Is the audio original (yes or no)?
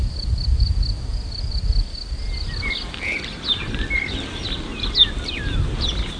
yes